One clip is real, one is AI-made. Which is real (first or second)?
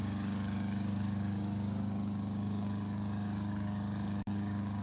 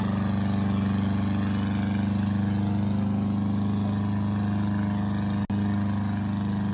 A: second